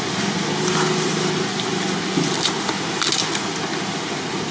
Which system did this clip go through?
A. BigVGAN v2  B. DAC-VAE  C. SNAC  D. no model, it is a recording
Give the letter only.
D